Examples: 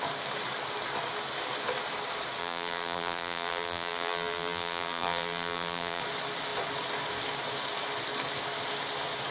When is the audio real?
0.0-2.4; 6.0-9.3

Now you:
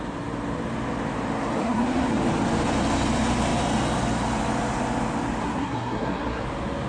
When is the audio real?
0.0-1.6; 2.2-5.4; 6.4-6.9

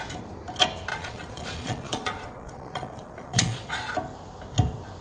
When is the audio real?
0.0-0.9; 3.9-5.0

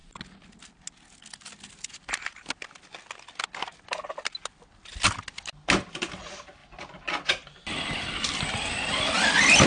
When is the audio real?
0.0-9.7

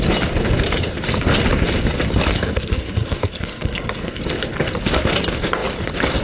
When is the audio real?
0.0-2.3; 4.2-6.2

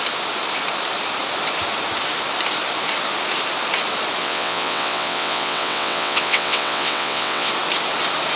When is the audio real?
0.0-4.2; 7.5-8.4